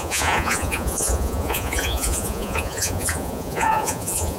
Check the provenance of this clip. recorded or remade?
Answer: remade